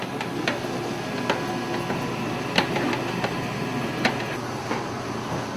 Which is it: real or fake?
real